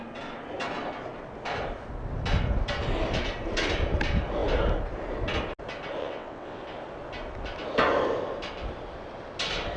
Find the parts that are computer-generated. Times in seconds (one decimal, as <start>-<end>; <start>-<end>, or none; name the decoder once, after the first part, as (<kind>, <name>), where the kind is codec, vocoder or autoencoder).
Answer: 6.0-6.6 (vocoder, WaveNeXt)